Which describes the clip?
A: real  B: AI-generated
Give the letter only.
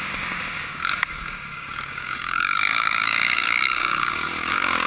B